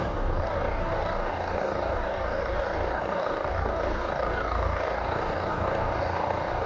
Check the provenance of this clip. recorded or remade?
remade